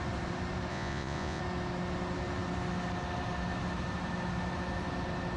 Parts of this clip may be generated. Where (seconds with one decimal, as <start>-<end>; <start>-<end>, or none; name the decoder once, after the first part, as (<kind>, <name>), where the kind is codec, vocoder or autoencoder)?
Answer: 0.7-1.4 (vocoder, Vocos)

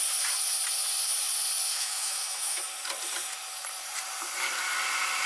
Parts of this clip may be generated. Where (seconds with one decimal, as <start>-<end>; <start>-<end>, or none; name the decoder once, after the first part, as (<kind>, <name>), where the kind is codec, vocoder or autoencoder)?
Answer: 1.7-2.6 (autoencoder, DAC-VAE)

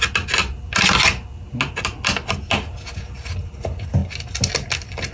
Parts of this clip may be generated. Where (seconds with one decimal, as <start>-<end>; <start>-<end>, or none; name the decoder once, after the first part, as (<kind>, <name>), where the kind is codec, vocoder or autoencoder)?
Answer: none

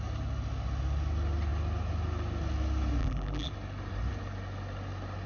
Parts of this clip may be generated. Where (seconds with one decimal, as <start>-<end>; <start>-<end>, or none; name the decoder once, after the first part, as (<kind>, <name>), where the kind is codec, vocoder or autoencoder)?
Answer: 3.0-3.5 (vocoder, BigVGAN v2)